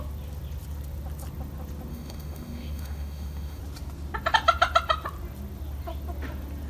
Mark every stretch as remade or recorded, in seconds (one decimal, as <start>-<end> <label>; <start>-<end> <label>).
0.0-1.9 recorded; 1.9-3.6 remade; 3.6-6.7 recorded